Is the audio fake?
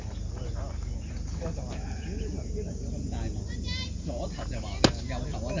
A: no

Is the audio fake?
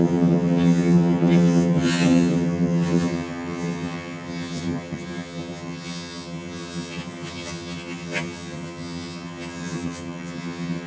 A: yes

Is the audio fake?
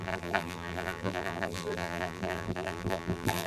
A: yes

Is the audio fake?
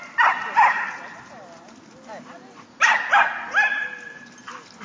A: no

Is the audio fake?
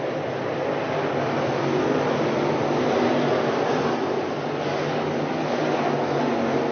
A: no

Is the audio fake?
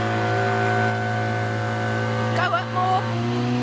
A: no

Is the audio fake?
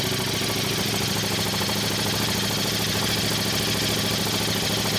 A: no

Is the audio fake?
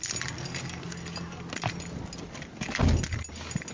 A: no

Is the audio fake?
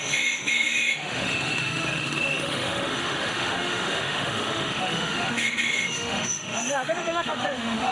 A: yes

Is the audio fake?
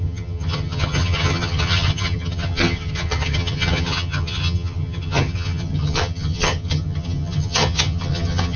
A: yes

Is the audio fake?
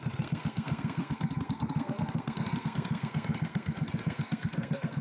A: yes